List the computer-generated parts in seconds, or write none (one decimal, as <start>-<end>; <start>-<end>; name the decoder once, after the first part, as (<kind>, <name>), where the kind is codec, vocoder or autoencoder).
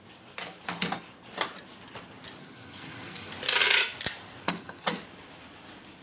2.4-3.3 (codec, SNAC); 4.4-5.0